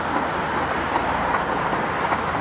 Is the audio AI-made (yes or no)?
no